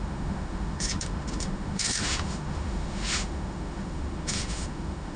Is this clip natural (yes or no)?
no